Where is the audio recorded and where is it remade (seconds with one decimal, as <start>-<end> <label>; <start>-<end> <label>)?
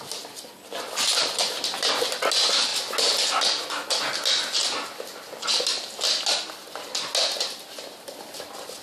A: 0.0-8.8 recorded